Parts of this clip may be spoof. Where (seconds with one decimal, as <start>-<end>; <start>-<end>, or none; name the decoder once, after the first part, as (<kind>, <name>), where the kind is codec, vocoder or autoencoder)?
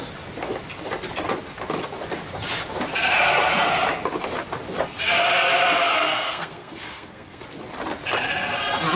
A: 5.9-7.4 (codec, SNAC)